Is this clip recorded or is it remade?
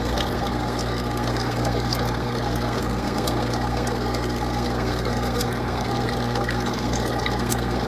remade